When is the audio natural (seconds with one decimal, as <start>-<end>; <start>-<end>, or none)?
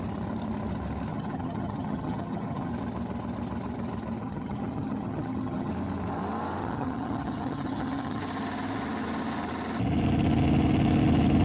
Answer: 0.0-1.1; 2.7-4.2; 5.7-6.6; 8.2-11.4